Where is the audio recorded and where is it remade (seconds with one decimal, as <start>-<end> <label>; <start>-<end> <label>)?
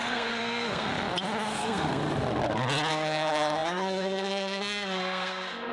0.0-0.9 remade; 0.9-1.5 recorded; 1.5-2.0 remade; 2.0-2.9 recorded; 2.9-5.7 remade